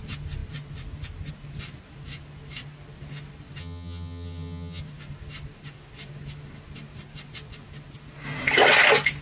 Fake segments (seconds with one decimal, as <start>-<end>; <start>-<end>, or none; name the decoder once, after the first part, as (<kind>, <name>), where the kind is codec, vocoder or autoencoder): 3.6-4.8 (vocoder, HiFi-GAN)